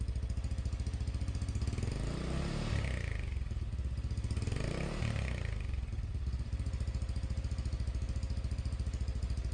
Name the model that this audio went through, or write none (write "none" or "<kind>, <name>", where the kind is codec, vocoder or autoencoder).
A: none